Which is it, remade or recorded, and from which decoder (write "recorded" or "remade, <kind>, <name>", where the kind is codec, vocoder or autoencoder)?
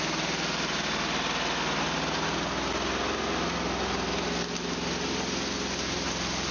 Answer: recorded